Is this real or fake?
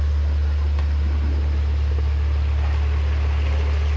real